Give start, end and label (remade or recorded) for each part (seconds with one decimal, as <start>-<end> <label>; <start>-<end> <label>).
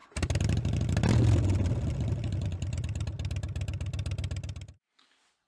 0.0-5.5 recorded